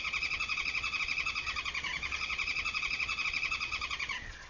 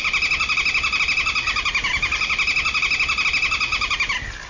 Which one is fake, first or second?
first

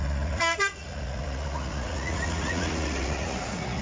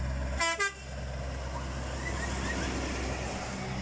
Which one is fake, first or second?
first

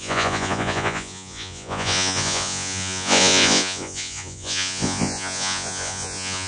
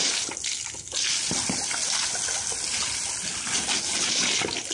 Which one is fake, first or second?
first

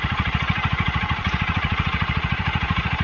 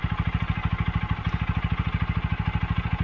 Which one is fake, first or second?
first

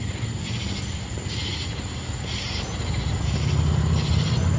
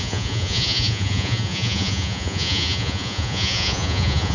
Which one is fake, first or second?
second